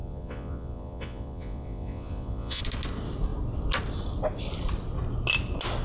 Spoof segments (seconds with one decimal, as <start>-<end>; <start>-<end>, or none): 0.0-2.6